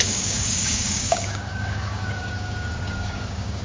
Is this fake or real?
fake